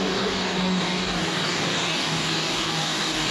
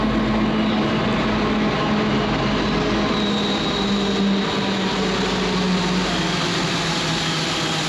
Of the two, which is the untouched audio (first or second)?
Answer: second